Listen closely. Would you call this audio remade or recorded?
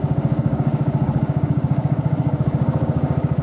remade